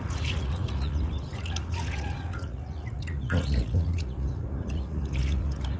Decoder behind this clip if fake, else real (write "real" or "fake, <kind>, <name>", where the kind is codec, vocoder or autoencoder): fake, vocoder, Vocos